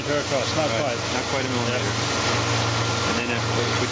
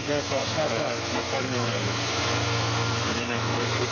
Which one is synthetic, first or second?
second